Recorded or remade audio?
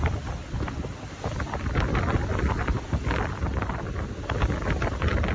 recorded